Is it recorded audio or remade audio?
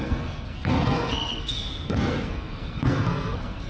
remade